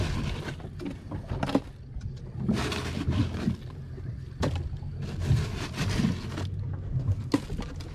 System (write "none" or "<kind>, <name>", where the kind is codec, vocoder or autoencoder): none